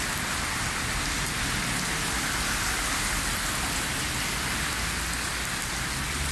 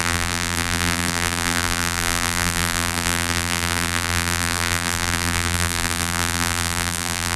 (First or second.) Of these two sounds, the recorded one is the first